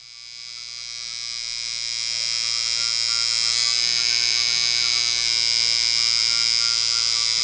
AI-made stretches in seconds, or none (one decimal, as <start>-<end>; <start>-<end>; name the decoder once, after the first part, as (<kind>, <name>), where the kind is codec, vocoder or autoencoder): none